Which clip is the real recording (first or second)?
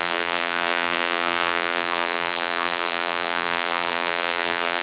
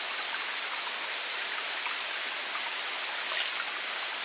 second